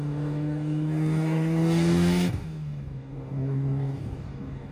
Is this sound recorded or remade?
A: remade